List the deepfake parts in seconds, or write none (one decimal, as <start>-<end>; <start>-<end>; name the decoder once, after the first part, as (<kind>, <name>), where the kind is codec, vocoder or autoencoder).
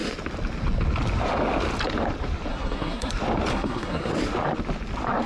2.5-3.1 (codec, SNAC); 3.5-4.1